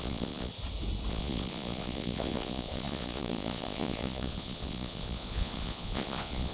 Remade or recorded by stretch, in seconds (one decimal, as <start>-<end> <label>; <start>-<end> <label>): 0.0-0.5 remade; 0.5-1.1 recorded; 1.1-6.5 remade